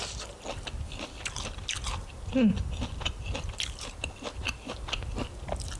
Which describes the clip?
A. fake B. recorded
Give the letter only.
B